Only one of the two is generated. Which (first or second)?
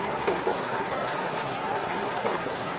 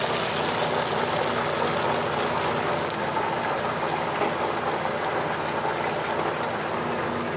first